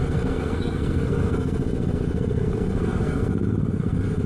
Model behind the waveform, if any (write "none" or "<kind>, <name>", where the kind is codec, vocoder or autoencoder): codec, SNAC